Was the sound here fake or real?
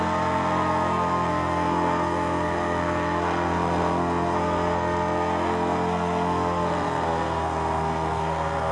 fake